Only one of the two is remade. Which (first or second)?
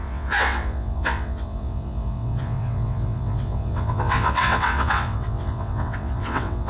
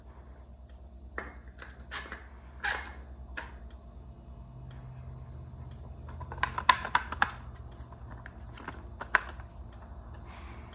first